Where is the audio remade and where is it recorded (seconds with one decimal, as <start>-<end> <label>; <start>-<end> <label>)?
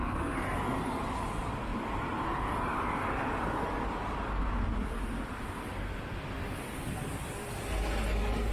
0.0-8.5 recorded